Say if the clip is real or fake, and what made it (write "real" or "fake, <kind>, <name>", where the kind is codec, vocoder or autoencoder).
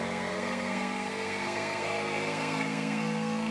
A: fake, codec, SNAC